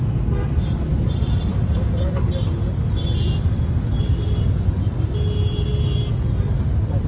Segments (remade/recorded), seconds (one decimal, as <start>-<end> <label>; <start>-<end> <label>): 0.0-7.1 recorded